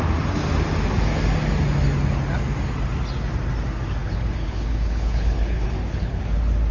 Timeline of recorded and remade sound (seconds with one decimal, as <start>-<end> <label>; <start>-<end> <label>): 0.0-4.0 recorded; 4.0-6.2 remade; 6.2-6.7 recorded